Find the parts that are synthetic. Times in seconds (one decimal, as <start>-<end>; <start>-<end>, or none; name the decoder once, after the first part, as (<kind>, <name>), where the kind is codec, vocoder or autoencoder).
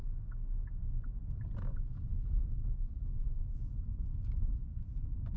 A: 1.2-3.8 (vocoder, BigVGAN v2); 4.7-5.4